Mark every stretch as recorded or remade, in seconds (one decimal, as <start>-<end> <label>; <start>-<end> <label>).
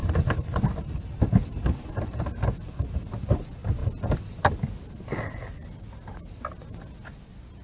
0.0-2.5 remade; 2.5-7.6 recorded